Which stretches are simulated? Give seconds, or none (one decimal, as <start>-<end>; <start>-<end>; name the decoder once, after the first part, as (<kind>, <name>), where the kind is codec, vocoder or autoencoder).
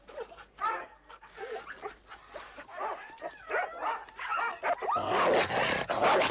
0.8-1.6 (codec, SNAC)